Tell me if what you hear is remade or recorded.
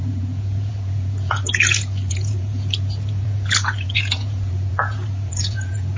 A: remade